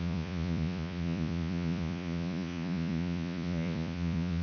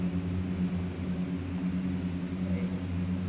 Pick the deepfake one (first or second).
first